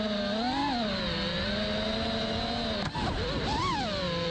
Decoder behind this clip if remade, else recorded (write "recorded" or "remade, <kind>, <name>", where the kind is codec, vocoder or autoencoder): recorded